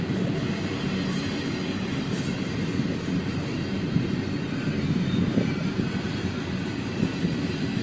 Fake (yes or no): yes